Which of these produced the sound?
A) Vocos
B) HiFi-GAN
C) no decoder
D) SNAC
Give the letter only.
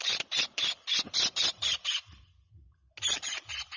C